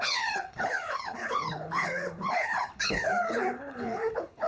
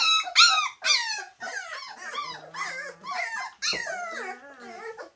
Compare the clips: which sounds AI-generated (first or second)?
first